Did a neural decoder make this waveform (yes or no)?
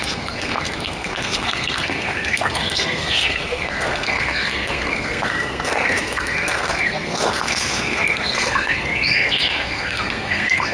yes